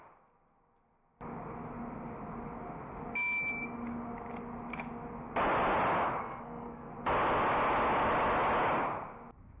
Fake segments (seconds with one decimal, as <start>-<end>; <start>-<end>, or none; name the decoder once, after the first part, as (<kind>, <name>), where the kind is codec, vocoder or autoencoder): 6.2-6.9 (codec, SNAC)